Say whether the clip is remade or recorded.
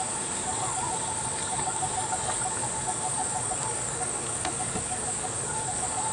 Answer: remade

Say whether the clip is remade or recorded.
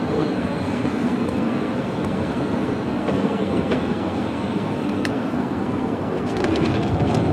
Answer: remade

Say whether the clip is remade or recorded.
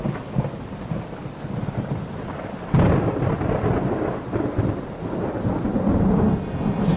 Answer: recorded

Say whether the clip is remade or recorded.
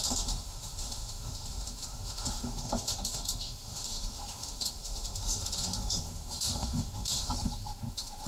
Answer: remade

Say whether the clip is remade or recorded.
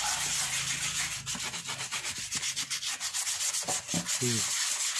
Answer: recorded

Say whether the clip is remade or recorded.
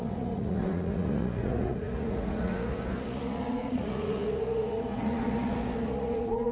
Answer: remade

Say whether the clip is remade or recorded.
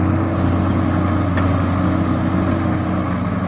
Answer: recorded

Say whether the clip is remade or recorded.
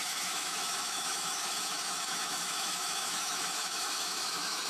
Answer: remade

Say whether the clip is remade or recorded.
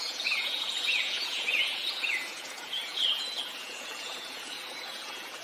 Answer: remade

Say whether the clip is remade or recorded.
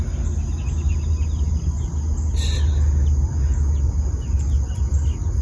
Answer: recorded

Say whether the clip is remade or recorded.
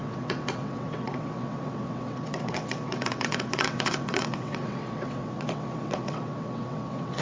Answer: remade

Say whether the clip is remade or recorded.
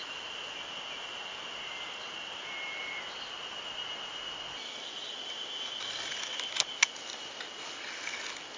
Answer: recorded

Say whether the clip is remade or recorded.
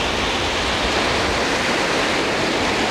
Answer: recorded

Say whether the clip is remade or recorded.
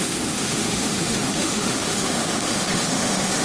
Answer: remade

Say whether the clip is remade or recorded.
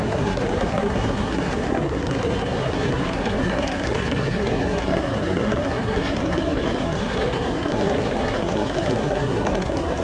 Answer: remade